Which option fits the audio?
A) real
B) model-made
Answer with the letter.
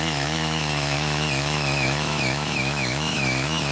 B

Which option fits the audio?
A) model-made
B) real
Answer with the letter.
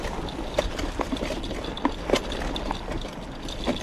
B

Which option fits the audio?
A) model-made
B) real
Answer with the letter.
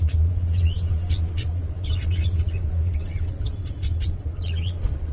A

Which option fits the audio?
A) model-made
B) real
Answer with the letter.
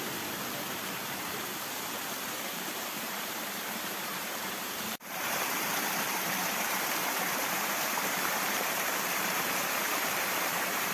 A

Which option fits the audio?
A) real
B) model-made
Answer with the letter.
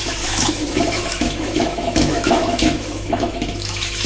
B